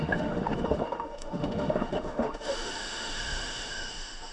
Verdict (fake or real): fake